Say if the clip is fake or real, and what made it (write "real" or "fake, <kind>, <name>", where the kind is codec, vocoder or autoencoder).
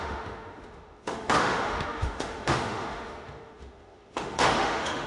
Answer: fake, autoencoder, DAC-VAE